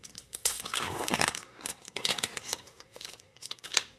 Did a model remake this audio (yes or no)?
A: yes